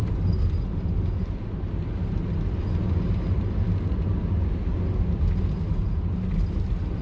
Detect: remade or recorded recorded